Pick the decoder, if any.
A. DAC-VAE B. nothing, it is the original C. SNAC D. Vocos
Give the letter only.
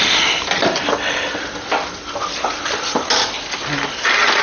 B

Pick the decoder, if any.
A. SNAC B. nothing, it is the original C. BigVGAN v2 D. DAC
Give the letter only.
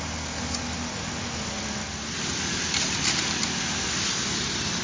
B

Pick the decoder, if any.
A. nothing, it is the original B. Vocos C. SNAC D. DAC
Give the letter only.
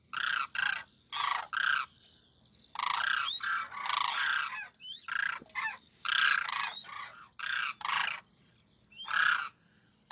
A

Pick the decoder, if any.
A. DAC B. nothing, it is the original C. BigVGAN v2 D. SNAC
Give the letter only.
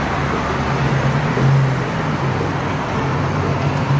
B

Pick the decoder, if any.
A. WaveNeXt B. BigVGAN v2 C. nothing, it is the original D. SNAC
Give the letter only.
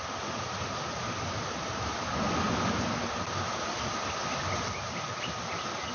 C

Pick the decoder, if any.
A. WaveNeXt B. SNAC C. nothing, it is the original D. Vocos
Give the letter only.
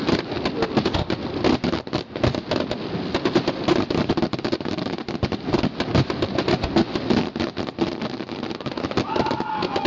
C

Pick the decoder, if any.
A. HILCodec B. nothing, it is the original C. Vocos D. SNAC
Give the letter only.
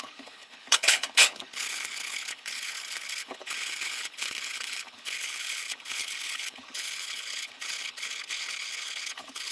A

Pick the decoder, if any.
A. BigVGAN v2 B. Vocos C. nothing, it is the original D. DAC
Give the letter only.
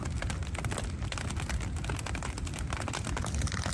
C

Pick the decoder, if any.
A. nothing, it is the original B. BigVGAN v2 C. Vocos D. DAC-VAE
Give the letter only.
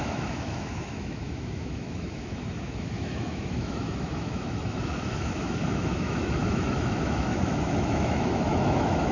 D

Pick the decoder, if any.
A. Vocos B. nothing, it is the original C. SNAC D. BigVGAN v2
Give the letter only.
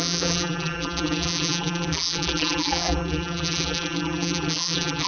D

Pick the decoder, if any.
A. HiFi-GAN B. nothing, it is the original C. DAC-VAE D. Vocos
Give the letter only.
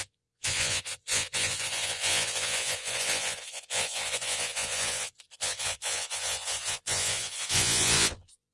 D